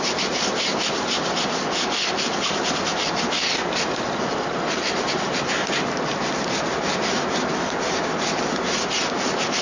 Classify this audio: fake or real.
real